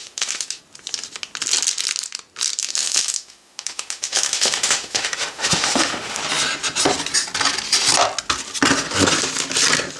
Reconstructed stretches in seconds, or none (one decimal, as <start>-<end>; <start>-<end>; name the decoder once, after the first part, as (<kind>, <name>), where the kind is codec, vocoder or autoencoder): 0.0-0.6 (autoencoder, DAC-VAE); 2.6-6.2

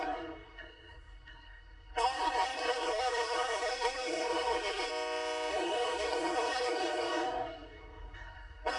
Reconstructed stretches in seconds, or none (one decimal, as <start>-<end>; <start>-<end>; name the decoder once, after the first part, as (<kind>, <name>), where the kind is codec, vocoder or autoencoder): 0.0-4.9 (codec, SNAC); 5.5-8.8

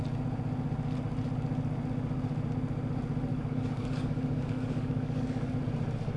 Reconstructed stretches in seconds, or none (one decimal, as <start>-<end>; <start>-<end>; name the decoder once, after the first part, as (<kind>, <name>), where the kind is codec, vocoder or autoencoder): 3.3-5.5 (codec, DAC)

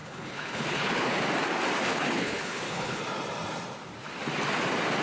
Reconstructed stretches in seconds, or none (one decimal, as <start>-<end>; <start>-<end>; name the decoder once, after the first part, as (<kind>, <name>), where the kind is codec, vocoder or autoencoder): 0.0-1.2 (codec, HILCodec); 1.9-3.0